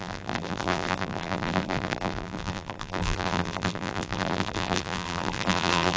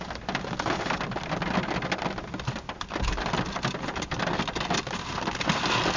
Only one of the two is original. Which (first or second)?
second